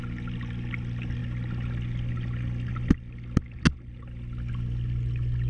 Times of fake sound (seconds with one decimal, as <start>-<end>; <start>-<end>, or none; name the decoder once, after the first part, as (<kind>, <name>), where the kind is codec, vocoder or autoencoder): none